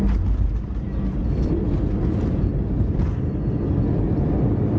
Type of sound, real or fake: real